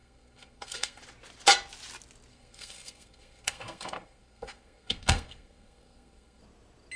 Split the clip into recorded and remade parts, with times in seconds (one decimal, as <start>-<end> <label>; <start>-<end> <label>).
0.0-1.0 remade; 1.0-2.3 recorded; 2.3-6.4 remade; 6.4-7.0 recorded